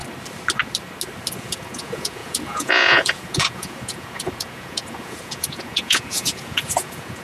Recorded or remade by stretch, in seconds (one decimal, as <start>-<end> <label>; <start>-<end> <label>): 0.0-1.4 recorded; 1.4-7.2 remade